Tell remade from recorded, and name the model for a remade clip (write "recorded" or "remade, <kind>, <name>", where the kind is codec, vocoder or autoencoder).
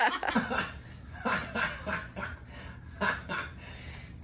recorded